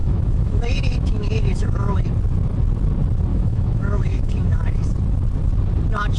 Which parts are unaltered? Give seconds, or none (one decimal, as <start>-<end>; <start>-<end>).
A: 2.0-3.3; 4.9-6.2